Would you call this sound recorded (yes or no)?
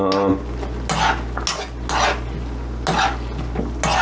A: yes